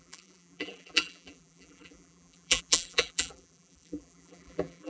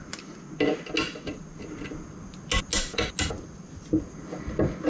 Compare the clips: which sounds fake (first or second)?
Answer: first